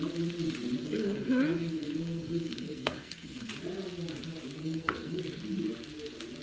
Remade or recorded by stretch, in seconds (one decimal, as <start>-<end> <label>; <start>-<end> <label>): 0.0-0.8 recorded; 0.8-3.5 remade; 3.5-4.6 recorded; 4.6-5.2 remade; 5.2-6.4 recorded